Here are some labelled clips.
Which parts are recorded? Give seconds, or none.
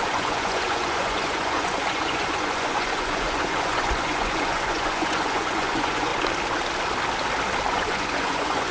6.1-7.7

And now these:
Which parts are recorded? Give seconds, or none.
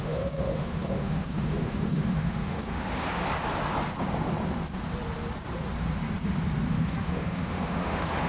3.2-6.7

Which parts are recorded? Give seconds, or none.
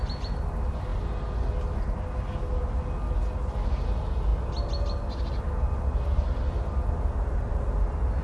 0.0-8.2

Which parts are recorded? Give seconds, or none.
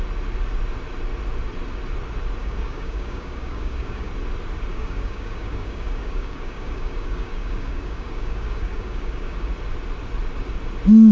0.0-2.4; 4.1-4.7; 9.5-11.1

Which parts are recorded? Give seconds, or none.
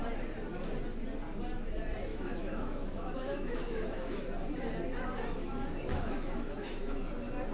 0.0-2.1; 4.2-5.9; 7.1-7.5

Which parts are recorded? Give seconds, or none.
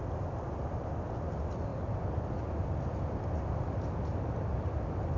0.0-5.2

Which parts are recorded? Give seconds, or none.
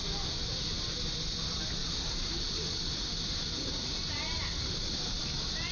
0.0-1.8; 5.2-5.7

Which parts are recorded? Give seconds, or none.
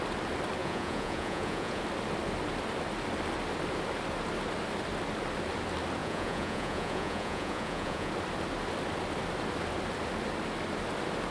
0.0-0.6; 1.8-6.0; 8.1-11.3